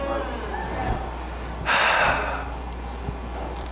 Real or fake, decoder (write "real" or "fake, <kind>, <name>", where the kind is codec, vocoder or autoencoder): real